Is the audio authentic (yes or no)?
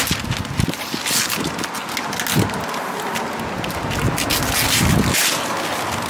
yes